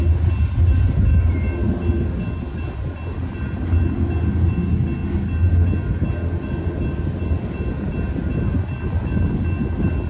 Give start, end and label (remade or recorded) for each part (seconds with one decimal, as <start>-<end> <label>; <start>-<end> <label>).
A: 0.0-10.1 recorded